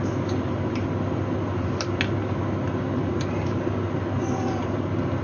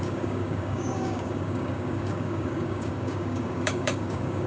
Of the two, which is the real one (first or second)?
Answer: first